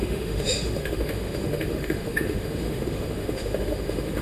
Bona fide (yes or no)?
no